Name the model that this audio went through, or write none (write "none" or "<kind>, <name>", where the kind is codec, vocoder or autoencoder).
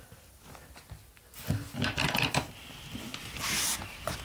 none